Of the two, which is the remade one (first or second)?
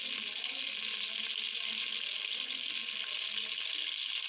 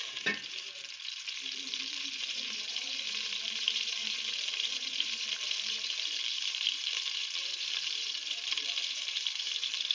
second